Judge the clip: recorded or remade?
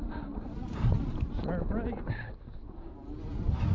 recorded